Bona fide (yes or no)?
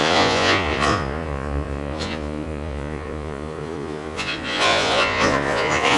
no